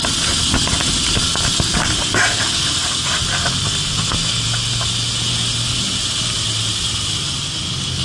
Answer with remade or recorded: recorded